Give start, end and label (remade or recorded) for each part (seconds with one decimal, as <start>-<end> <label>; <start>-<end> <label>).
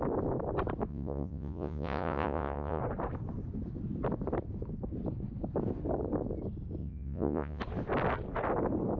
0.0-0.9 recorded; 0.9-2.8 remade; 2.8-6.8 recorded; 6.8-7.6 remade; 7.6-9.0 recorded